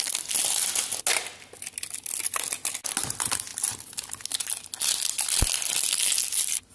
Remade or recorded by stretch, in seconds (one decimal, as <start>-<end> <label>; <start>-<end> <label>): 0.0-6.7 recorded